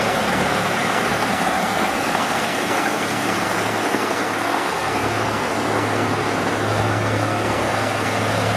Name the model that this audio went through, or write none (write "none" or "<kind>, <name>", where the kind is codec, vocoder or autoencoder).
codec, SNAC